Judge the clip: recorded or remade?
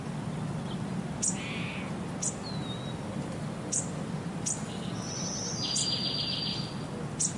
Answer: recorded